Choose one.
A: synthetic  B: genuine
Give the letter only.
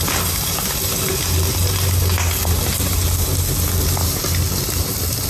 B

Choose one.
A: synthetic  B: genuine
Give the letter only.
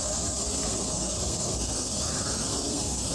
A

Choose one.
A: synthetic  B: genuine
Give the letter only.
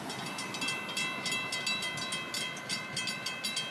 B